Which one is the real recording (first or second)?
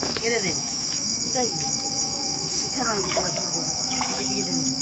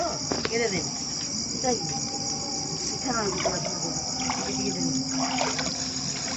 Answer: second